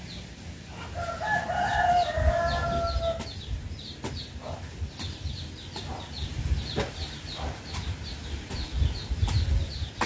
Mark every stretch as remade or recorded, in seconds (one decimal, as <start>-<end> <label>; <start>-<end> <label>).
0.0-6.3 recorded; 6.3-9.5 remade; 9.5-10.1 recorded